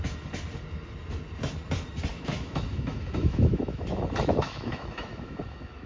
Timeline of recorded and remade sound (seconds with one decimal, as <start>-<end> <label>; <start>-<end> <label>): 0.0-2.1 recorded; 2.1-5.9 remade